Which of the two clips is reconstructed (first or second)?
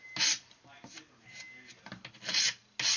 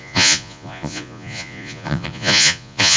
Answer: second